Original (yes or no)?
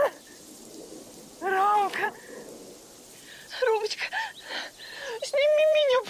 no